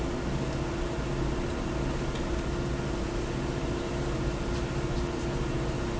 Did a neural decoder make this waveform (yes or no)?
no